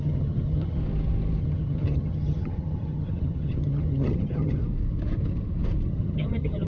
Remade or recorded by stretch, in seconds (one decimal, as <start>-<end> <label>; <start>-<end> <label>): 0.0-0.8 remade; 0.8-1.4 recorded; 1.4-4.6 remade; 4.6-5.9 recorded; 5.9-6.7 remade

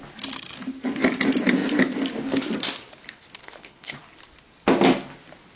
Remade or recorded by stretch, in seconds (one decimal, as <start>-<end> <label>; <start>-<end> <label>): 0.0-3.4 recorded; 3.4-4.0 remade; 4.0-5.6 recorded

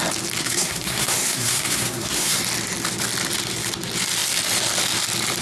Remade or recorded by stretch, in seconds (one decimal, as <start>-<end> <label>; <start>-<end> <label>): 0.0-0.4 recorded; 0.4-2.4 remade; 2.4-5.4 recorded

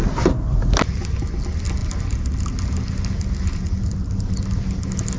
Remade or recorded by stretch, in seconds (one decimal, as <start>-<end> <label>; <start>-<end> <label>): 0.0-5.2 recorded

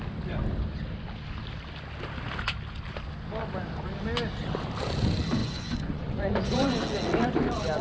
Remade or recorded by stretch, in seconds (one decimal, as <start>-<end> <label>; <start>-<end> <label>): 0.0-5.4 recorded; 5.4-6.8 remade; 6.8-7.8 recorded

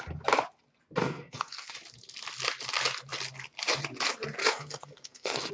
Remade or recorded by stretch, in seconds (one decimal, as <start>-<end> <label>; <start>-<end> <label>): 0.0-1.0 recorded; 1.0-1.7 remade; 1.7-4.4 recorded; 4.4-5.5 remade